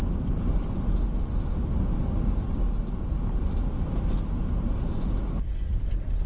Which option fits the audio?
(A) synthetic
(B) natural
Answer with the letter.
B